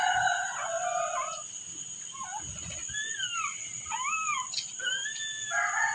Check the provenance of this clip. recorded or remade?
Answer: recorded